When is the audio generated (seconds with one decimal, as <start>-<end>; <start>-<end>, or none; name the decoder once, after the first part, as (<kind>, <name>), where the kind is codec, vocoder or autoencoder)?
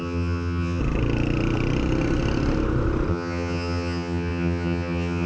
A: 0.0-0.8 (vocoder, HiFi-GAN); 3.1-5.3